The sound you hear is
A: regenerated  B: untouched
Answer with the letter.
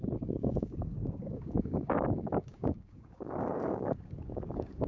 A